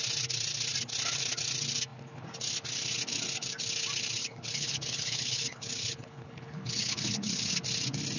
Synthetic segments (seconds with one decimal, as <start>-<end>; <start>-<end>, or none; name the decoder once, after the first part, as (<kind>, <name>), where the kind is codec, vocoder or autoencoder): 4.2-7.5 (codec, HILCodec)

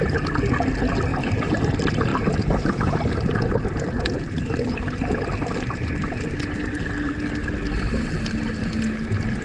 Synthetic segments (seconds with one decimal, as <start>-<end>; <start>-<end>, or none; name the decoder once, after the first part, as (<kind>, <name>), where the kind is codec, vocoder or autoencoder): 1.1-1.7 (vocoder, BigVGAN v2); 2.1-7.1

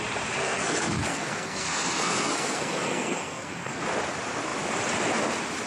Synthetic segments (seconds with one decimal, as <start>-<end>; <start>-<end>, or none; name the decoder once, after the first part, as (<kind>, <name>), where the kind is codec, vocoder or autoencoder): 0.4-3.8 (codec, SNAC)

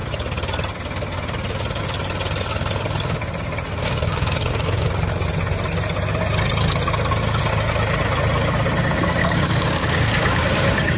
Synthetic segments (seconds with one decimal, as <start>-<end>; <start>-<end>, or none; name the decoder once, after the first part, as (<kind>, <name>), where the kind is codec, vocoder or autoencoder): 3.8-4.9 (codec, DAC); 9.2-11.0

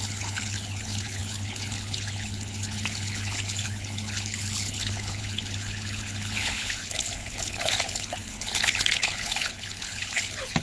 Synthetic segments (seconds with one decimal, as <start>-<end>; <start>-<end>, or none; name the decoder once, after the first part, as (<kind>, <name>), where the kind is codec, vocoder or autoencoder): 0.0-10.6 (codec, HILCodec)

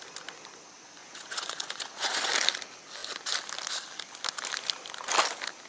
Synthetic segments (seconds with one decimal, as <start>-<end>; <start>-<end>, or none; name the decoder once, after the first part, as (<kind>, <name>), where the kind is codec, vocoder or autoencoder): 1.0-2.3 (vocoder, Vocos)

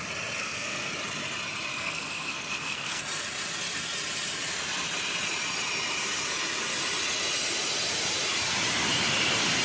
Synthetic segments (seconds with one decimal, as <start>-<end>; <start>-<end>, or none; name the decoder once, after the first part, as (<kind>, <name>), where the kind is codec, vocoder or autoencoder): 0.4-0.9 (codec, SNAC); 1.7-3.0